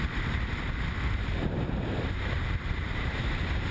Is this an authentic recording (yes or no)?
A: no